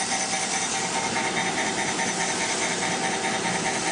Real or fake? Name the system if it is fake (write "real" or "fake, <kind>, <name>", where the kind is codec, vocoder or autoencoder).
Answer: real